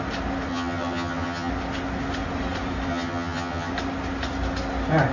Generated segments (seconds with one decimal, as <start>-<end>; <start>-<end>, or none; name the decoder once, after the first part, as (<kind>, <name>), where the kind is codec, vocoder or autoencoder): 0.5-1.5 (vocoder, HiFi-GAN); 2.9-3.7